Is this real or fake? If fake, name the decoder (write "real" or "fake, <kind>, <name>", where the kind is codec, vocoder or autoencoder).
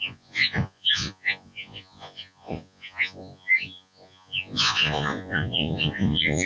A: fake, vocoder, Vocos